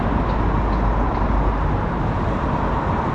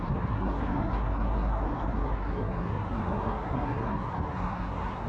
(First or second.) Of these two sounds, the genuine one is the first